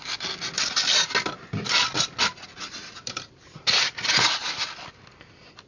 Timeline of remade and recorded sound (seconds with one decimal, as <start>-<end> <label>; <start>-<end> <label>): 0.0-5.7 recorded